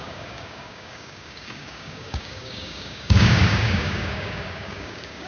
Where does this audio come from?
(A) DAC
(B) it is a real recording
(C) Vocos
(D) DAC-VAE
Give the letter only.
A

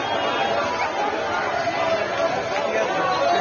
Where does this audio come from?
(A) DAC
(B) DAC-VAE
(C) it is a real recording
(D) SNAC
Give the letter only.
C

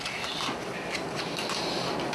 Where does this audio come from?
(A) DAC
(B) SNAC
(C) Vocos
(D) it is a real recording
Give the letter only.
D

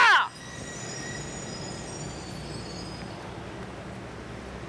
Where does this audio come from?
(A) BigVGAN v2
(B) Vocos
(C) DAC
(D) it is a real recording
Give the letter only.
D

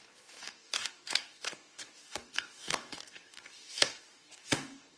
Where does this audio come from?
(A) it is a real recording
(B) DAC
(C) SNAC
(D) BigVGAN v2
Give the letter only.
B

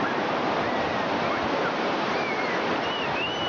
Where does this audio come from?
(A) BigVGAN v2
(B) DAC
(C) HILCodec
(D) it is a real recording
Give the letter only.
D